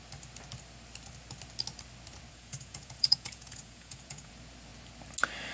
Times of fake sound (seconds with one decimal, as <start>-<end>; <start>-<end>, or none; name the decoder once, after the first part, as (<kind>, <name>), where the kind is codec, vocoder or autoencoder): 2.3-4.3 (vocoder, Vocos)